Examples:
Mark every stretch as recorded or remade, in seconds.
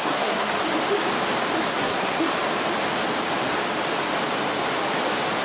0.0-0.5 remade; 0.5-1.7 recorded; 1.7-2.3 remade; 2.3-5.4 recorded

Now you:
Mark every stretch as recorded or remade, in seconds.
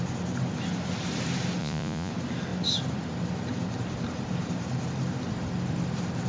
0.0-1.6 recorded; 1.6-2.1 remade; 2.1-6.3 recorded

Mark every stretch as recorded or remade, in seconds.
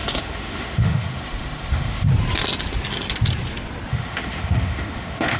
0.0-2.1 remade; 2.1-3.9 recorded; 3.9-5.4 remade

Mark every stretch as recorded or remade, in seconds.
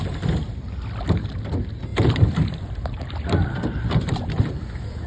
0.0-1.9 recorded; 1.9-5.1 remade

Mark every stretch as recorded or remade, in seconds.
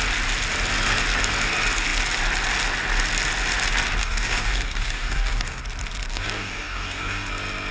0.0-4.0 recorded; 4.0-5.6 remade; 5.6-6.1 recorded; 6.1-7.3 remade; 7.3-7.7 recorded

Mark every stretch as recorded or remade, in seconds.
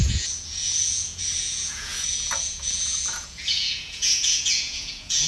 0.0-5.3 remade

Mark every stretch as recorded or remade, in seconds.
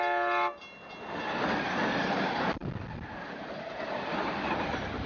0.0-5.1 recorded